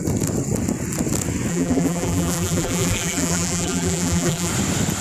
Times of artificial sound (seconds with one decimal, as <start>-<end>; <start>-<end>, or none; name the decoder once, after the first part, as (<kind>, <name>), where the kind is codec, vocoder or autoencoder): 1.5-4.5 (vocoder, BigVGAN v2)